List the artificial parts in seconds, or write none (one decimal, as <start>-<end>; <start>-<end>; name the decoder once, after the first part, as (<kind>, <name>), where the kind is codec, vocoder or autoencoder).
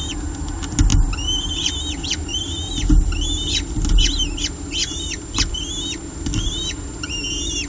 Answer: none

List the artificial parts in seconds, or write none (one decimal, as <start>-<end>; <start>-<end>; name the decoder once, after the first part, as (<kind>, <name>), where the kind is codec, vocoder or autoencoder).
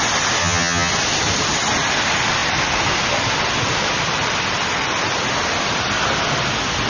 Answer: 0.4-0.9 (vocoder, HiFi-GAN)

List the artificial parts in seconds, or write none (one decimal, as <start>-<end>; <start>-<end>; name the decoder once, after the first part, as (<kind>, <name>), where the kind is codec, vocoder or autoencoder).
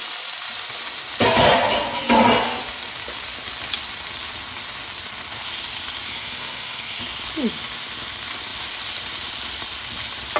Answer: 6.1-7.0 (codec, SNAC)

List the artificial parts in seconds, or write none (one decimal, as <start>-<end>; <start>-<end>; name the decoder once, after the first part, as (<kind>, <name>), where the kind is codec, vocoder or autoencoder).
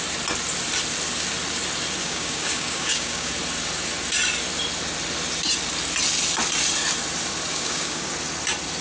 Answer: 2.0-3.3 (codec, DAC); 7.5-8.1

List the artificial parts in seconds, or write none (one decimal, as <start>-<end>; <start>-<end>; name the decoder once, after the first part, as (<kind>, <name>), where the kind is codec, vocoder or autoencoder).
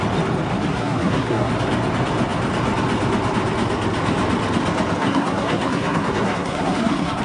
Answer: 0.7-1.5 (codec, SNAC); 5.0-7.2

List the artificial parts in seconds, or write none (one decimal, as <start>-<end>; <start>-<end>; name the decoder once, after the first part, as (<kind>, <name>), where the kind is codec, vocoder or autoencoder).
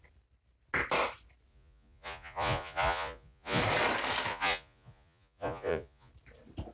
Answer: 1.5-3.6 (vocoder, Vocos); 4.3-6.1